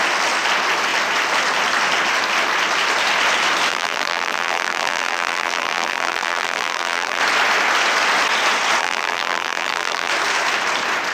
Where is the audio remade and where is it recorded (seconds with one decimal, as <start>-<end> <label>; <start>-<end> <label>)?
0.0-3.7 recorded; 3.7-7.2 remade; 7.2-8.8 recorded; 8.8-10.1 remade; 10.1-11.1 recorded